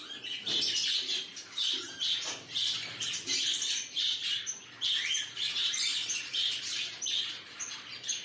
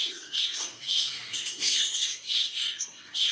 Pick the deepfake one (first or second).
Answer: second